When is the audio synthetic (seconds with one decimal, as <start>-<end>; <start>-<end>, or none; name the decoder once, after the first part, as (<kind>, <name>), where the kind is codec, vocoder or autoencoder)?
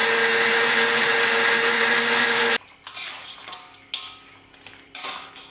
none